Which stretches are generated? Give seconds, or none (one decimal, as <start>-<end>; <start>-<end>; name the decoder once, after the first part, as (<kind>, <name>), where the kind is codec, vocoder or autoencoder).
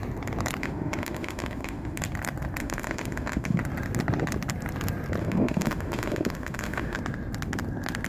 0.6-2.0 (autoencoder, DAC-VAE); 2.6-3.6; 5.2-7.0